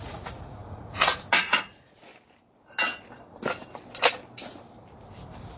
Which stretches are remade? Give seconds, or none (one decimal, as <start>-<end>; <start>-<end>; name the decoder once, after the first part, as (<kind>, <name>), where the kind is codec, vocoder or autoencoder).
0.0-2.1 (vocoder, Vocos)